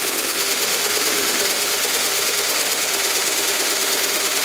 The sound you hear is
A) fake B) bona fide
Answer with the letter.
A